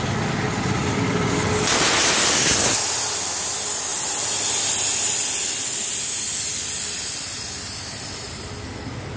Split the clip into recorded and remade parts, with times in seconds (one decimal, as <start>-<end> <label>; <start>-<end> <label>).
0.0-9.2 recorded